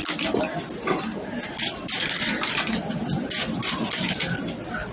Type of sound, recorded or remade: recorded